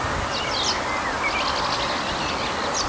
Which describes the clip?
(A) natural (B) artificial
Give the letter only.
A